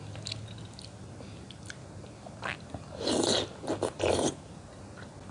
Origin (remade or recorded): recorded